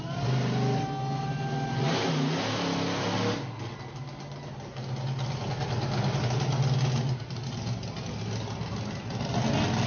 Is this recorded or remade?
recorded